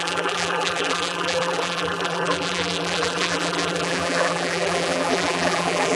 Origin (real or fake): fake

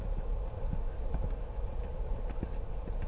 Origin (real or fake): real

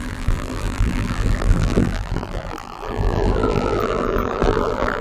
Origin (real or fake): fake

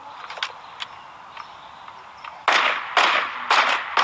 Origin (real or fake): real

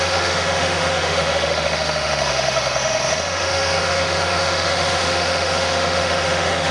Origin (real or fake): fake